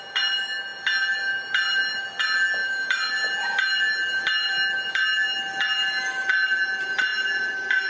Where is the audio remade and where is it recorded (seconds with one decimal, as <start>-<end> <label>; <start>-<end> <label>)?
0.0-7.9 recorded